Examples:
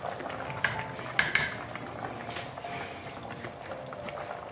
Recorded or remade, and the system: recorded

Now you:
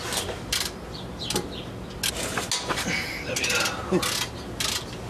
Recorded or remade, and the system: recorded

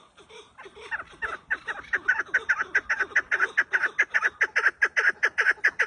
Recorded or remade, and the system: recorded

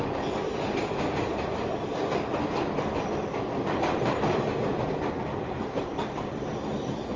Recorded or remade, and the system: recorded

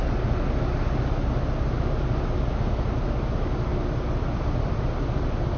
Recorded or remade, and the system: recorded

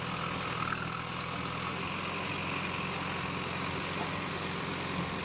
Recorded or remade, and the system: recorded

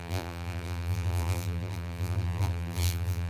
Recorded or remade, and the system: remade, vocoder, BigVGAN v2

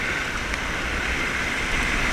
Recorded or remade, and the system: recorded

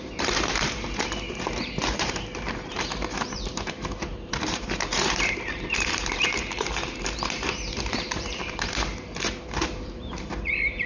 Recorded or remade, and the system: remade, vocoder, BigVGAN v2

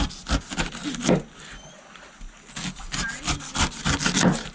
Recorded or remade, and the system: recorded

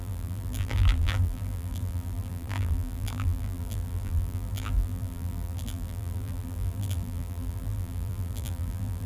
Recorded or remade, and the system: remade, vocoder, BigVGAN v2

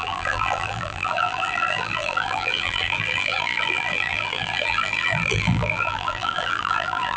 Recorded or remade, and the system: remade, vocoder, BigVGAN v2